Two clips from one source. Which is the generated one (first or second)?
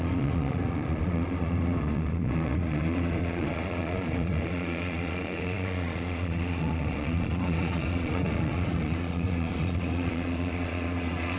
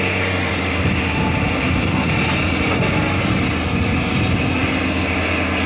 first